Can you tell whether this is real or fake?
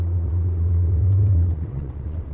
fake